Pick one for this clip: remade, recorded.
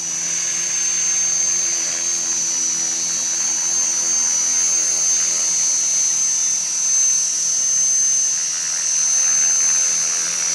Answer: recorded